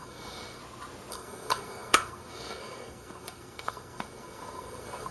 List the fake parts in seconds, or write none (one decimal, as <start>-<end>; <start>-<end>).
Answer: 0.0-0.6; 1.1-5.1